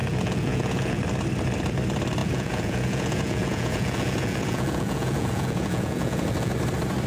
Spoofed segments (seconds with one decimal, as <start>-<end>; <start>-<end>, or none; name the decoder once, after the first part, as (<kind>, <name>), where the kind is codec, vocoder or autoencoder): 0.0-1.0 (vocoder, Vocos); 2.2-6.5